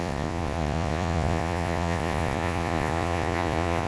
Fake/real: fake